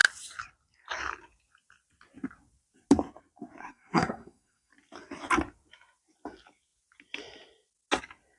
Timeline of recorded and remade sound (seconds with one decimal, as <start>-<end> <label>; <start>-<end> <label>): 0.0-3.6 recorded; 3.6-4.7 remade; 4.7-8.4 recorded